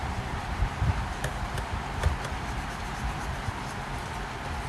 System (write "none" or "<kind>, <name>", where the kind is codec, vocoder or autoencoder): vocoder, BigVGAN v2